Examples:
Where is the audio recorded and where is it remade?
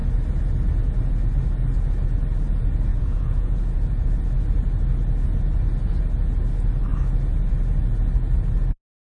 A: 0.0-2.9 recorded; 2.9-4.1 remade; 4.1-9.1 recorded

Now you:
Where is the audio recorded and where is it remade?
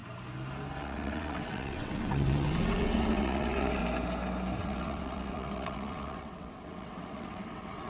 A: 0.0-0.7 recorded; 0.7-3.8 remade; 3.8-4.6 recorded; 4.6-7.9 remade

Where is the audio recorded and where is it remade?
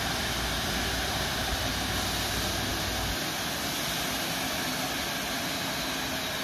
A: 0.0-6.4 recorded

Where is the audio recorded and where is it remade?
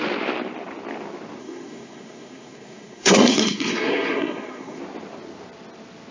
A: 0.0-1.4 recorded; 1.4-4.8 remade; 4.8-6.1 recorded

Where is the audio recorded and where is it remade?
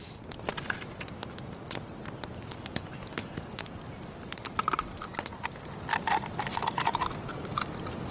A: 0.0-8.1 recorded